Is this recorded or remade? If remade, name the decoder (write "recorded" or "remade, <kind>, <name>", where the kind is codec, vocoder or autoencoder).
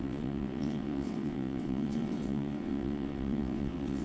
remade, vocoder, WaveNeXt